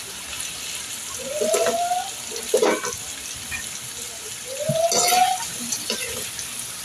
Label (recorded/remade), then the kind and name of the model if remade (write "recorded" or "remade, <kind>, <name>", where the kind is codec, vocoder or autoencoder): recorded